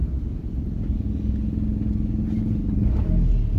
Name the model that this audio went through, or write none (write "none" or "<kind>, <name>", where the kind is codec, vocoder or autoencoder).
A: none